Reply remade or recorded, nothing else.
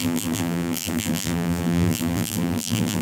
remade